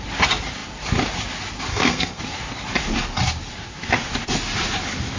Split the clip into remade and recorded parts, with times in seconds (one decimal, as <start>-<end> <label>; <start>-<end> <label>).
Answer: 0.0-1.7 recorded; 1.7-2.2 remade; 2.2-5.2 recorded